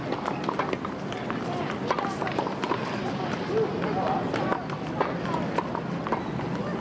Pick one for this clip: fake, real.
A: real